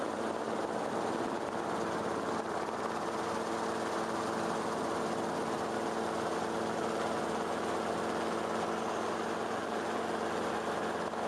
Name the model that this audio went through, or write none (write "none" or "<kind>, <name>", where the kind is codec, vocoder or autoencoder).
none